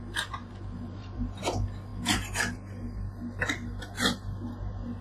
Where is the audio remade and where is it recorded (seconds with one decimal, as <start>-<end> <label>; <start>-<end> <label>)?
0.0-0.4 recorded; 0.4-1.4 remade; 1.4-5.0 recorded